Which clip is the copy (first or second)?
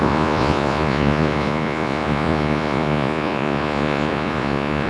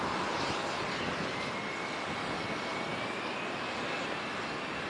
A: first